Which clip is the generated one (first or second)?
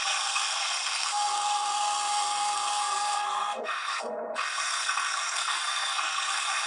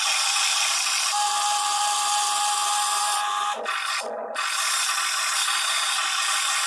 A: first